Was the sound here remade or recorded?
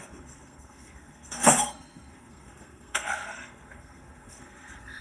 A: remade